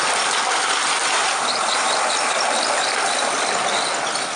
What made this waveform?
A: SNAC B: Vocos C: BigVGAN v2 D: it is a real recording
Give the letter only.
D